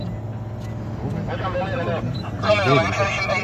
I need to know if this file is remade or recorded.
recorded